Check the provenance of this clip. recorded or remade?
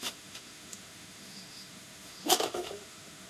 remade